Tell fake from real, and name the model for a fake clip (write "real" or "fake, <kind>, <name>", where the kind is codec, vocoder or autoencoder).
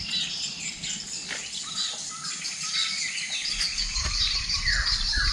real